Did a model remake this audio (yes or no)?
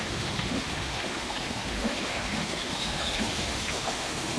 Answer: yes